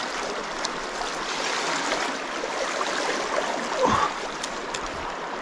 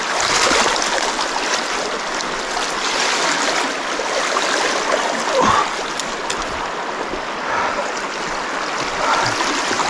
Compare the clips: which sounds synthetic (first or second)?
first